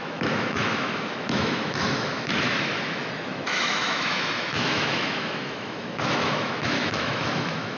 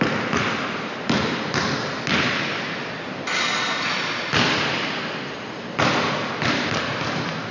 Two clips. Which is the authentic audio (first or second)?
second